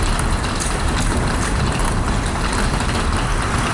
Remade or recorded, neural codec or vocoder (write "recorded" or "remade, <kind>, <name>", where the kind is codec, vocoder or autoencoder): recorded